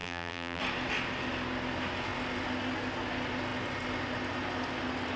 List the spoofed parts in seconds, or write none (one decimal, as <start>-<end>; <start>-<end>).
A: 0.0-0.6